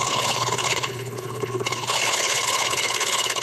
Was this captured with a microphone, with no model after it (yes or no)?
no